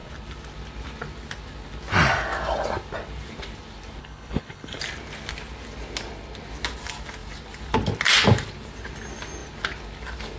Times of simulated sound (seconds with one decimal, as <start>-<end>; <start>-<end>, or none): 4.0-4.8